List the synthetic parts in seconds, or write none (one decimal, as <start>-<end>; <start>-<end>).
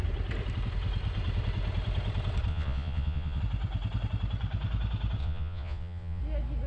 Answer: 2.5-3.4; 5.2-6.2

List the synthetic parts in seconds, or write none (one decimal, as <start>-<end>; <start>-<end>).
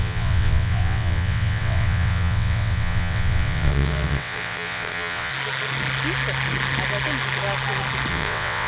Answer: 0.0-5.3; 8.1-8.7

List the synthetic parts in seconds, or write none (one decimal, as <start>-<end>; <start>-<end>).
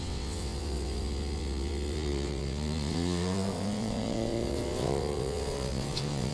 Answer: 0.0-6.3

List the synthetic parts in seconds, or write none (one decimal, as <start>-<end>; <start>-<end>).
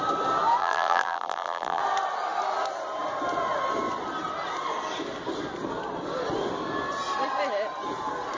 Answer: 0.6-1.8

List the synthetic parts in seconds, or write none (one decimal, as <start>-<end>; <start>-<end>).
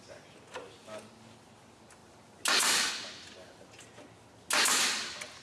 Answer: none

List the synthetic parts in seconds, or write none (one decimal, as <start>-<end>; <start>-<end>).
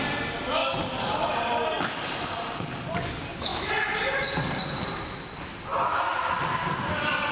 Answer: 0.6-3.1; 3.5-4.2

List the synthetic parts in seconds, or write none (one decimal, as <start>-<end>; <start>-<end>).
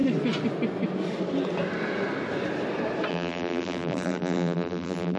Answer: 3.1-5.2